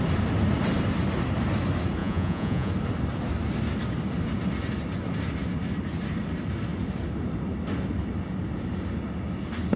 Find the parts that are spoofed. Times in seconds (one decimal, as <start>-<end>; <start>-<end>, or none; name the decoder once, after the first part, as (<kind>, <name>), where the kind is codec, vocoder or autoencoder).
2.0-2.7 (vocoder, Vocos)